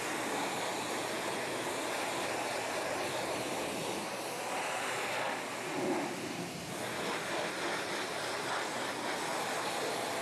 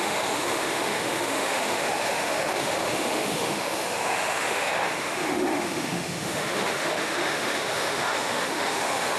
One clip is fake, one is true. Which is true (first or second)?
first